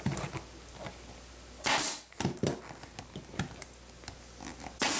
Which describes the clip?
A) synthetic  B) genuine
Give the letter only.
B